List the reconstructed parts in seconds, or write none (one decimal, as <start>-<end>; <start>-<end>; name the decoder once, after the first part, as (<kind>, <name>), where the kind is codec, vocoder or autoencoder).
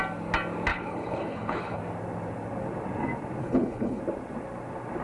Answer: 0.7-1.8 (codec, HILCodec); 3.4-4.0